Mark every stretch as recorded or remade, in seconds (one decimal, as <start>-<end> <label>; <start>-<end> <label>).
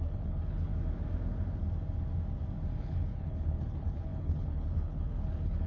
0.0-0.7 remade; 0.7-2.8 recorded; 2.8-5.7 remade